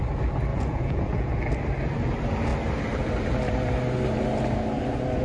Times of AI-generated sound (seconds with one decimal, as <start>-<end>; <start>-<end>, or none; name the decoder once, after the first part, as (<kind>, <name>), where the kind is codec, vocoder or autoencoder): 0.5-1.4 (vocoder, Vocos)